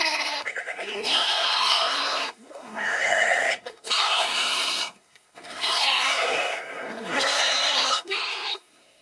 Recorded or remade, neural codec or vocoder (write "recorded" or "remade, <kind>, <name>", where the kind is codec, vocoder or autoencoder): remade, codec, SNAC